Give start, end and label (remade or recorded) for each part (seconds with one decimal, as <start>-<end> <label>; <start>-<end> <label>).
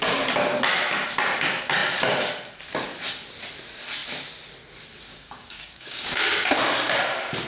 0.0-5.1 recorded; 5.1-6.5 remade; 6.5-7.5 recorded